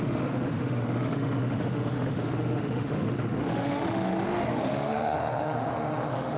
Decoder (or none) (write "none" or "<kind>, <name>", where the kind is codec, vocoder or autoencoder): autoencoder, DAC-VAE